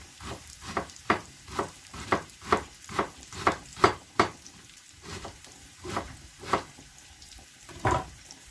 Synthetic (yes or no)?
yes